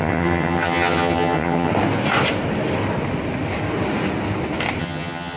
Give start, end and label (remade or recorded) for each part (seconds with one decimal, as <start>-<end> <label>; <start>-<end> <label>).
0.0-1.7 remade; 1.7-4.8 recorded; 4.8-5.4 remade